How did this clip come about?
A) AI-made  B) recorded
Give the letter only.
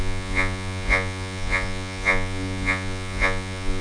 A